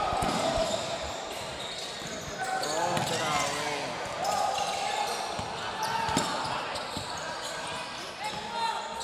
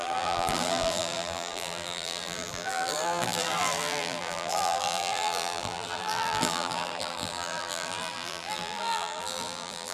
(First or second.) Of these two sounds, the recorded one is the first